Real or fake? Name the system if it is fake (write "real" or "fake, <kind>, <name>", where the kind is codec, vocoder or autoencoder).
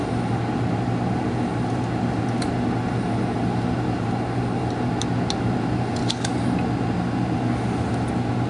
real